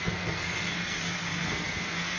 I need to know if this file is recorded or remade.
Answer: remade